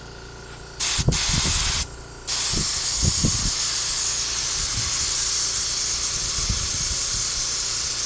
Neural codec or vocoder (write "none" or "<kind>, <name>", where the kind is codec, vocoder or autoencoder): none